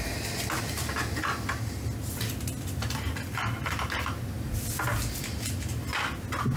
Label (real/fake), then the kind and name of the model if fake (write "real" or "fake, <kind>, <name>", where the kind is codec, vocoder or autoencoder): real